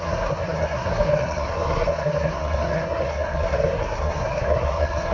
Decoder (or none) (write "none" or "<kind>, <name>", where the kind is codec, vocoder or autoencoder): codec, SNAC